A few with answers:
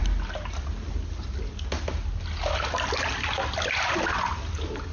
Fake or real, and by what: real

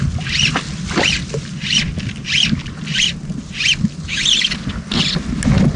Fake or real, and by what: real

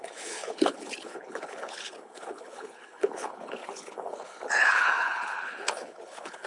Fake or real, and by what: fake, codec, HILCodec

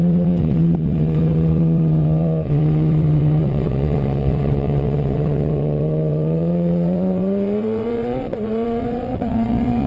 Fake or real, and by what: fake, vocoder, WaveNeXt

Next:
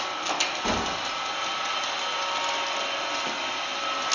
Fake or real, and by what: real